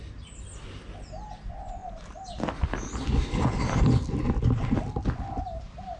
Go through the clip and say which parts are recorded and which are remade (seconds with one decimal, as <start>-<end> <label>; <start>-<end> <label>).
0.0-6.0 recorded